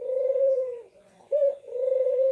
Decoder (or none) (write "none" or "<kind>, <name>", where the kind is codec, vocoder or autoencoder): vocoder, Vocos